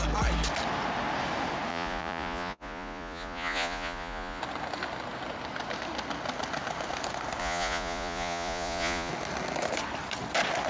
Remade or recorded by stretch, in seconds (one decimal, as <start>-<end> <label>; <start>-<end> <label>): 0.0-1.7 recorded; 1.7-4.4 remade; 4.4-7.4 recorded; 7.4-9.1 remade; 9.1-10.7 recorded